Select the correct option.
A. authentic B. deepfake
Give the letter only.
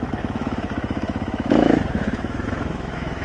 B